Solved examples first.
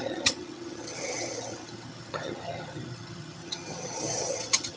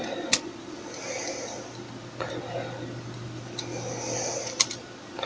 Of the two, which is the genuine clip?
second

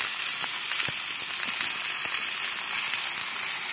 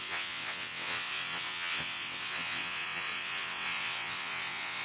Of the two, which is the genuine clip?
first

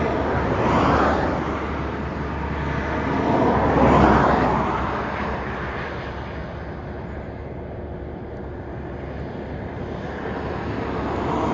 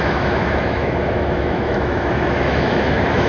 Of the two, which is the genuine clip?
first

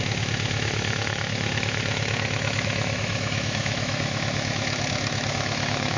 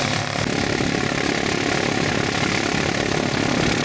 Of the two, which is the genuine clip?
second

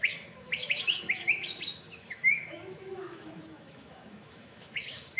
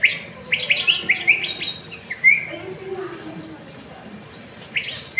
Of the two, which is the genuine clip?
second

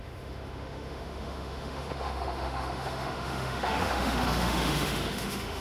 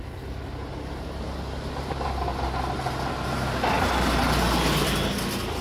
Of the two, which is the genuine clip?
second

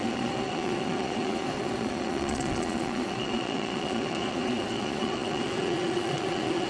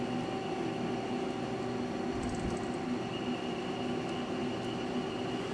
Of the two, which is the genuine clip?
second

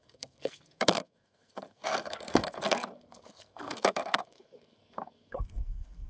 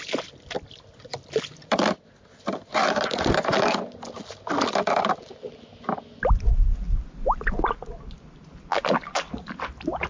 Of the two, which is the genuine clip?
second